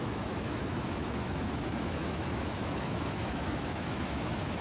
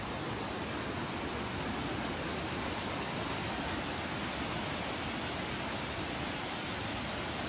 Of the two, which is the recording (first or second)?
second